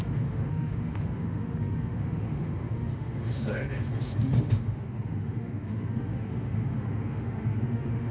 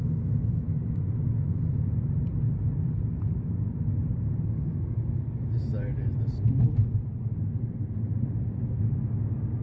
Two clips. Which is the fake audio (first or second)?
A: first